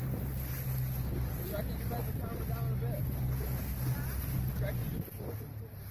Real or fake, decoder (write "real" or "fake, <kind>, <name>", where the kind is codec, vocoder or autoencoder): real